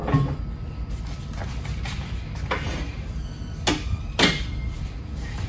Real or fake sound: real